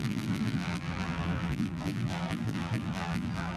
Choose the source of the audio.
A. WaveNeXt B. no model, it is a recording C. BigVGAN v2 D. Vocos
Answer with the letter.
C